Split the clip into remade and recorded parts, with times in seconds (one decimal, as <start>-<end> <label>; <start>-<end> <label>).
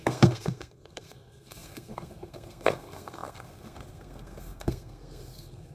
0.0-5.7 remade